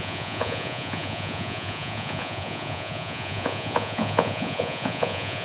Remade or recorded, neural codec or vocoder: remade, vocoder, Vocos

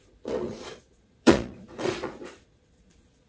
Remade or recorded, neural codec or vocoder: remade, vocoder, Vocos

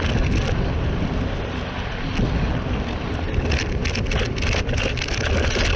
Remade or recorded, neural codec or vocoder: recorded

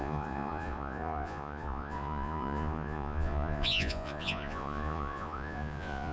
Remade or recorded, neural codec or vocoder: remade, vocoder, Vocos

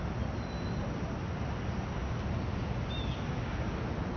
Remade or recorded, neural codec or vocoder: recorded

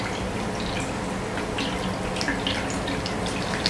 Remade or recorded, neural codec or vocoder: recorded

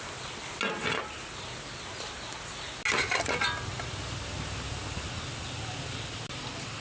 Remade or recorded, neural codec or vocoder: recorded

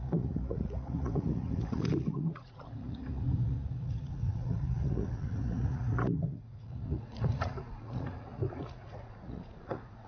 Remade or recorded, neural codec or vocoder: remade, vocoder, Vocos